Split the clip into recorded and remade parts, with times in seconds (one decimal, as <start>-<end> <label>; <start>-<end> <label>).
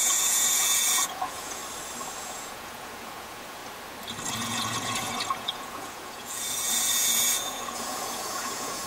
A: 0.0-1.6 remade; 1.6-2.2 recorded; 2.2-3.6 remade; 3.6-4.3 recorded; 4.3-8.9 remade